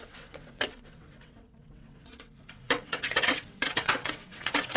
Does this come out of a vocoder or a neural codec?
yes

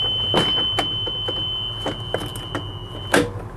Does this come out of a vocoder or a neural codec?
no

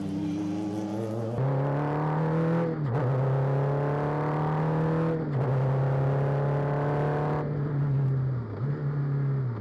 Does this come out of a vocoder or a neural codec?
no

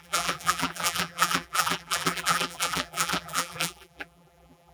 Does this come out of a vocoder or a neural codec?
yes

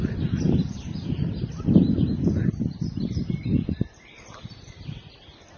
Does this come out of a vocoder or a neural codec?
no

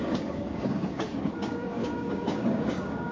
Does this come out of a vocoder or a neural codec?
yes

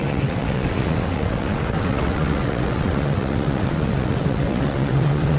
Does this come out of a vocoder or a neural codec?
yes